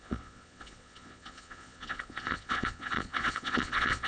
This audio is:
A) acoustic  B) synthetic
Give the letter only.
B